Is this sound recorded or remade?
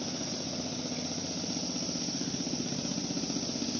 recorded